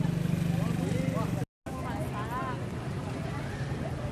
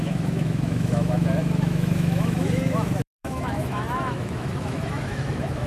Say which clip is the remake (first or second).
second